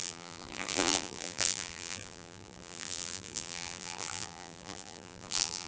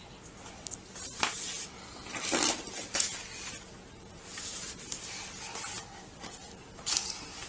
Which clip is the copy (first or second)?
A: first